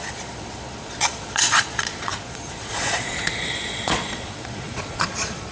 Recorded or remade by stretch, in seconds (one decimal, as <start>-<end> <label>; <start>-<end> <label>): 0.0-5.5 remade